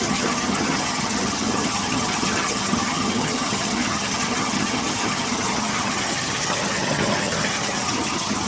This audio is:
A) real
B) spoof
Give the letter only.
B